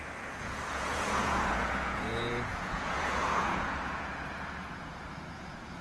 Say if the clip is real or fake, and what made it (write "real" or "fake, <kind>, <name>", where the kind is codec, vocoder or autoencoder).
fake, vocoder, Vocos